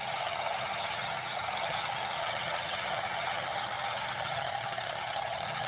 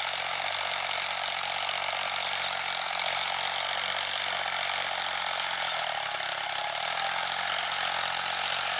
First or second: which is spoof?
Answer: first